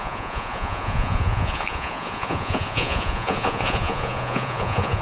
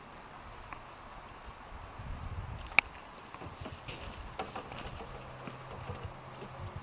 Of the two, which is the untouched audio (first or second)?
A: second